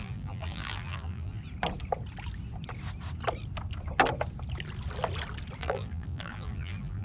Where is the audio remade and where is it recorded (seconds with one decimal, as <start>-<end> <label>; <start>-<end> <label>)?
0.0-1.4 remade; 1.4-5.6 recorded; 5.6-7.0 remade